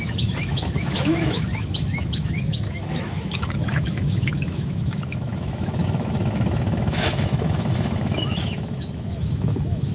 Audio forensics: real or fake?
fake